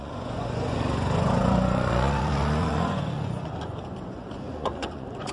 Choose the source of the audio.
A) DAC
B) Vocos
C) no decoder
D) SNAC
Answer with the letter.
B